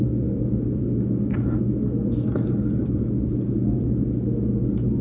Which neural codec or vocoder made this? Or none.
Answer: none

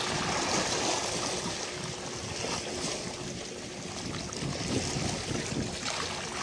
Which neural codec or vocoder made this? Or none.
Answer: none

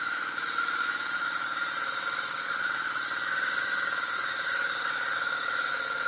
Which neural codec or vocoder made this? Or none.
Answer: autoencoder, DAC-VAE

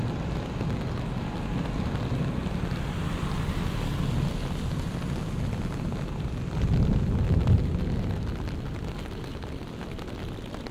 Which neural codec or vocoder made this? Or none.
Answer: none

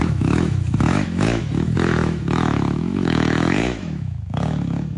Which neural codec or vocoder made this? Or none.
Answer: autoencoder, DAC-VAE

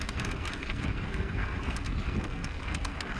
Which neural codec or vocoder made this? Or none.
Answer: codec, SNAC